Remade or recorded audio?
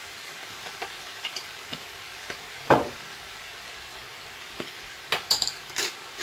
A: remade